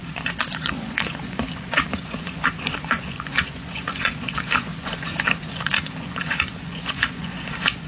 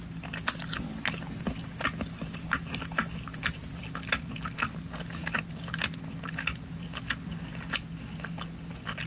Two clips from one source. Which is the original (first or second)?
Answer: second